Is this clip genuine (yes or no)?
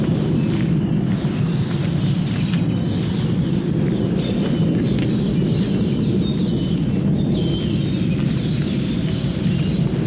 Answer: yes